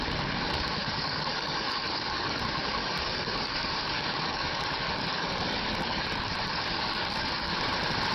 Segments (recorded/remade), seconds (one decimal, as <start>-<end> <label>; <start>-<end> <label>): 0.0-0.8 recorded; 0.8-2.4 remade; 2.4-2.8 recorded; 2.8-7.5 remade; 7.5-8.1 recorded